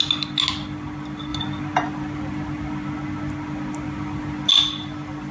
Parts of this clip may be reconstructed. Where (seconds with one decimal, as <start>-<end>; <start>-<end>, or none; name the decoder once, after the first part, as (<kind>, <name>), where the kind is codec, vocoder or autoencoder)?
none